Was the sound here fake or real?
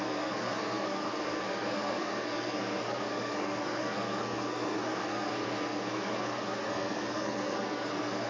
fake